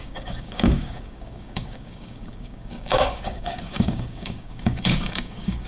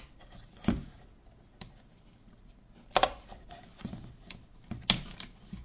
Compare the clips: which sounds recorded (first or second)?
second